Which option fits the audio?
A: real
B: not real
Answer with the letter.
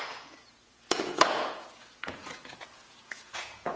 B